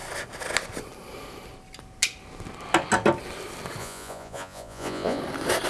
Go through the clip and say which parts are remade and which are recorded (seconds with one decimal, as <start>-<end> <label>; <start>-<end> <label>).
0.0-3.8 recorded; 3.8-5.2 remade; 5.2-5.7 recorded